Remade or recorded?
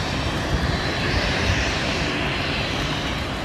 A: remade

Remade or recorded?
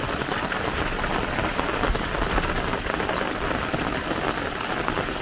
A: recorded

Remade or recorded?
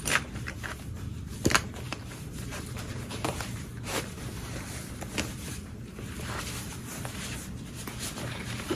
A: remade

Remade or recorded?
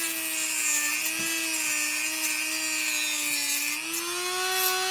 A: recorded